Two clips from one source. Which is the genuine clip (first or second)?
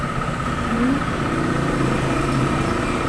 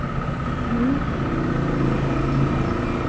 second